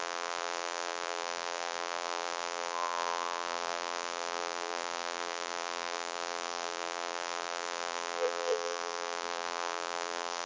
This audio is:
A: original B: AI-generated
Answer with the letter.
B